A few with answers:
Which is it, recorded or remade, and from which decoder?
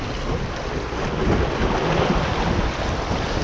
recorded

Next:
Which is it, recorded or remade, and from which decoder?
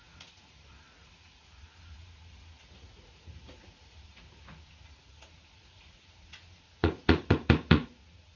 remade, vocoder, Vocos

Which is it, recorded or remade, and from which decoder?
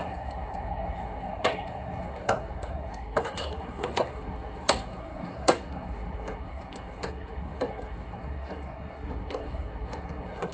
remade, codec, SNAC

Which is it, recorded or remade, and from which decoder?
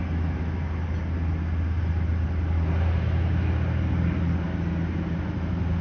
recorded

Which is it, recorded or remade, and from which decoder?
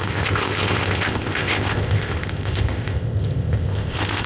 remade, codec, ZipCodec